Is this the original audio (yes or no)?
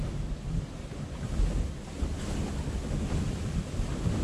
yes